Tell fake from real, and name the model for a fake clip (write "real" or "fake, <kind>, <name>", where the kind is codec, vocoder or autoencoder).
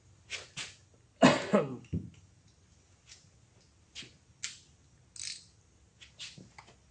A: real